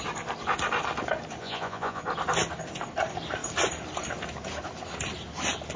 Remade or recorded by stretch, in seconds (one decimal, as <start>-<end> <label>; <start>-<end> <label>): 0.0-1.4 recorded; 1.4-2.0 remade; 2.0-5.8 recorded